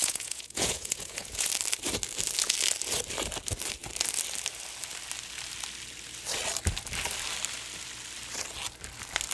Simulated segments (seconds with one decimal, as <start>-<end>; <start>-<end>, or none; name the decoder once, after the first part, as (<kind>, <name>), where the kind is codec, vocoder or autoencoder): 0.0-1.5 (vocoder, Vocos)